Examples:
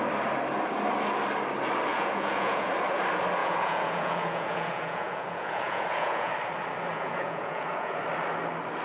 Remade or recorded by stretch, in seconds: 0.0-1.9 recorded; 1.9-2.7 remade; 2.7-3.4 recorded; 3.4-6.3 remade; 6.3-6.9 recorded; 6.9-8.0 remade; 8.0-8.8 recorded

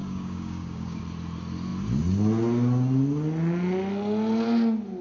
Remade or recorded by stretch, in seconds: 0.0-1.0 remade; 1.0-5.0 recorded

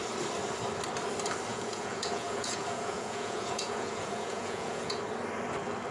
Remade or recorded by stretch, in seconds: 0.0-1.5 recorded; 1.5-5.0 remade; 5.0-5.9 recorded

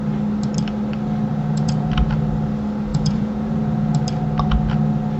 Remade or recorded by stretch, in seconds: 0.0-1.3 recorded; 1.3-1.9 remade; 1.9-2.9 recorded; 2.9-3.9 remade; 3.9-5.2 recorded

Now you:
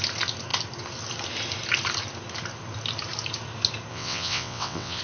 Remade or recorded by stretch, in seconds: 0.0-3.9 recorded; 3.9-5.0 remade

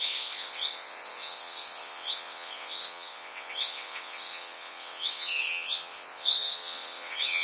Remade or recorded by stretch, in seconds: 0.0-7.4 remade